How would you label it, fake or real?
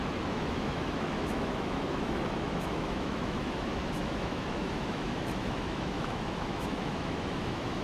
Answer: fake